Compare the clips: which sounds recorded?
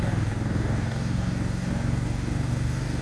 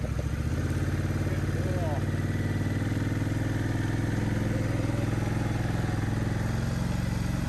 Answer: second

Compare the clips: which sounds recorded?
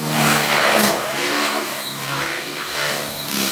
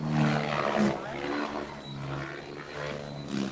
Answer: second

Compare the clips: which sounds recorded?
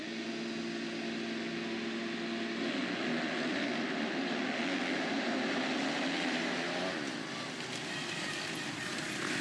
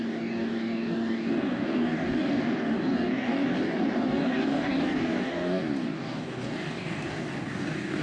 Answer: first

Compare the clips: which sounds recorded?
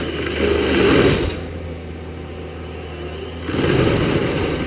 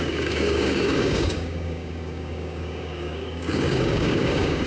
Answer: first